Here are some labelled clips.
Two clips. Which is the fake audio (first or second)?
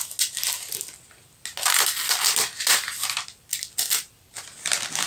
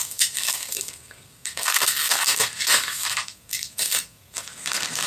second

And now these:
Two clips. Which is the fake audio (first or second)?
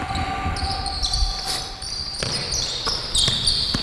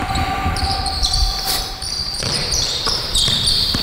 second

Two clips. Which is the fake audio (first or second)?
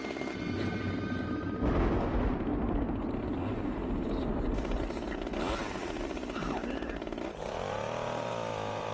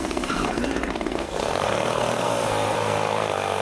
second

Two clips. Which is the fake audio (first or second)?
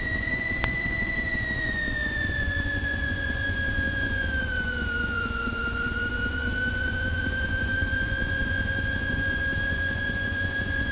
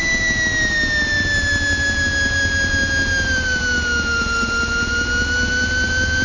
first